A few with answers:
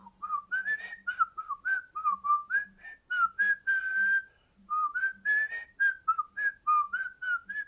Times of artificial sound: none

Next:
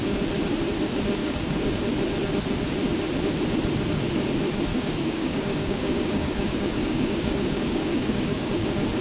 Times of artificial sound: 1.2-1.8 (codec, DAC); 4.7-9.0

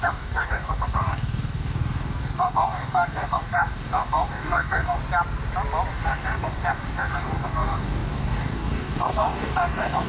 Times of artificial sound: 0.0-5.0 (codec, DAC); 5.9-10.1

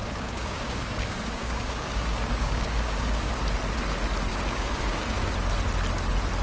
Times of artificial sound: 0.0-3.3 (codec, DAC); 4.3-5.3

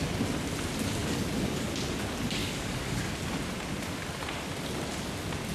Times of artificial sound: 1.0-1.7 (codec, DAC); 2.4-3.0

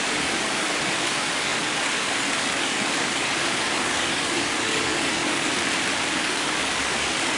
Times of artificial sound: 0.0-5.5 (codec, DAC); 6.2-7.4